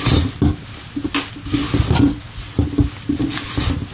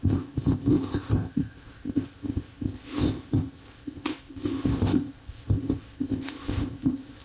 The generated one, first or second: second